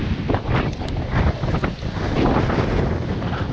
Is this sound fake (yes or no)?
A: no